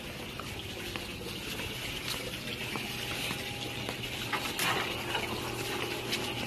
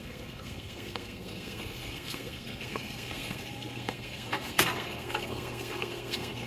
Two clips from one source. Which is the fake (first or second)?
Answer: second